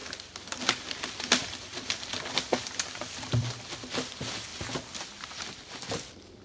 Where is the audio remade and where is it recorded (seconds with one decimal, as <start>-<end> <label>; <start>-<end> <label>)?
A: 0.0-3.6 remade; 3.6-4.5 recorded; 4.5-5.5 remade; 5.5-6.4 recorded